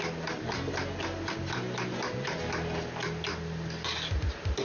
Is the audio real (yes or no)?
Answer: yes